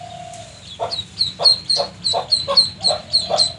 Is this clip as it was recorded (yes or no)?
yes